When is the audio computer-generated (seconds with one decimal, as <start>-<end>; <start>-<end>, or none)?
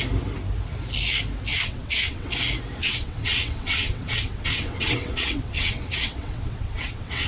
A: 1.5-2.3; 2.8-7.3